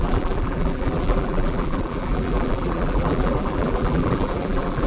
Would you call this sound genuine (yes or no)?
no